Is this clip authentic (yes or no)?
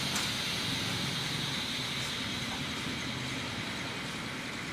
yes